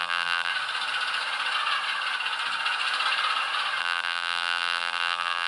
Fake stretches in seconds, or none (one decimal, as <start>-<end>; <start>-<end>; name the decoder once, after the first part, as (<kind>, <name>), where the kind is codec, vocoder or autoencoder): 0.0-0.5 (vocoder, BigVGAN v2); 3.8-5.5